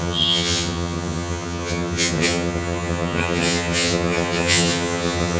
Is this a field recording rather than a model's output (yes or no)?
no